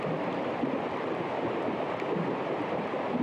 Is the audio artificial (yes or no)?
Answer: no